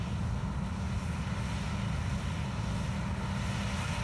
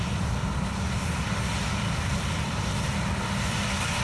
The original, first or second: first